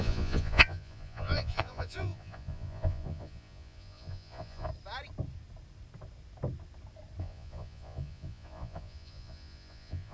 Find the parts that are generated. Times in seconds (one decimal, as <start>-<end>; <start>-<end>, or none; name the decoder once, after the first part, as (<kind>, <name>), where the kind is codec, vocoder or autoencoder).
0.0-4.7 (vocoder, Vocos); 7.2-10.1